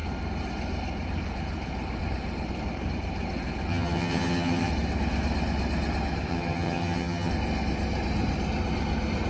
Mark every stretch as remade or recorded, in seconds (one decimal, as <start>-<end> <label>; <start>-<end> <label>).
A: 0.0-3.7 recorded; 3.7-4.7 remade; 4.7-6.3 recorded; 6.3-7.3 remade; 7.3-9.3 recorded